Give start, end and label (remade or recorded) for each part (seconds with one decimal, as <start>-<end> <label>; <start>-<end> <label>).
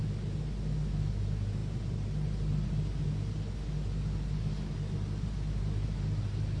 0.0-6.6 recorded